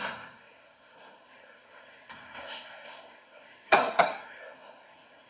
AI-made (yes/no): yes